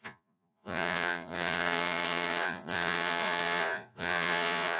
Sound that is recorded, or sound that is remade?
remade